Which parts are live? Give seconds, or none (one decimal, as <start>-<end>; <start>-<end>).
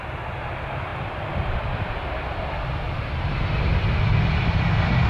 0.0-0.9; 3.1-5.1